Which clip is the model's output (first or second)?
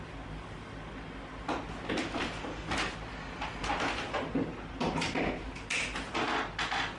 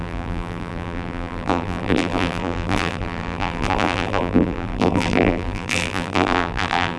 second